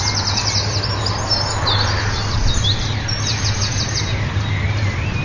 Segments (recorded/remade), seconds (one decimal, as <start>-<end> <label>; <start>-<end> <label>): 0.0-5.2 recorded